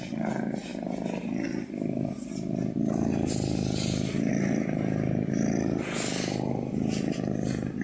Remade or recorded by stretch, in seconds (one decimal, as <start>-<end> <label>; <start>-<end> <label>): 0.0-7.8 recorded

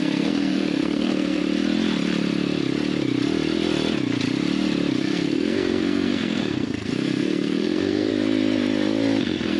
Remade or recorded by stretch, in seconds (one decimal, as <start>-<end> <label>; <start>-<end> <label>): 0.0-1.4 remade; 1.4-5.0 recorded; 5.0-8.1 remade; 8.1-9.2 recorded; 9.2-9.6 remade

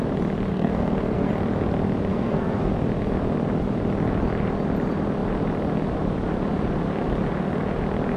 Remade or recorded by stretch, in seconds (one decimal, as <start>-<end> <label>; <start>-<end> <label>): 0.0-0.5 recorded; 0.5-1.3 remade; 1.3-2.1 recorded; 2.1-2.7 remade; 2.7-8.2 recorded

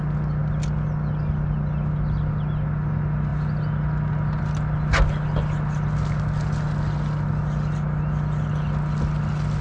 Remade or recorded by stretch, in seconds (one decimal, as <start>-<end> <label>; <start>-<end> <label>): 0.0-9.6 recorded

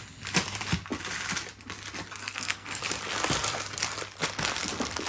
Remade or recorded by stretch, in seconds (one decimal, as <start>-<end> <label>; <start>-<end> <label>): 0.0-2.2 recorded; 2.2-2.8 remade; 2.8-5.1 recorded

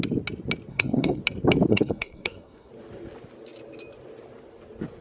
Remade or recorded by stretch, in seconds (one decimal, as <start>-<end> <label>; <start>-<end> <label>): 0.0-0.7 recorded; 0.7-1.2 remade; 1.2-1.7 recorded; 1.7-2.7 remade; 2.7-5.0 recorded